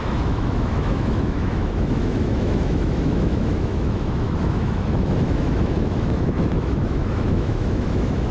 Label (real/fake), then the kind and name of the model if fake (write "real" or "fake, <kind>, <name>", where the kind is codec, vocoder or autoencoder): fake, autoencoder, DAC-VAE